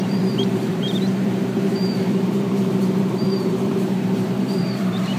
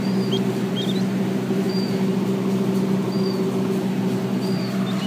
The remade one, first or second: first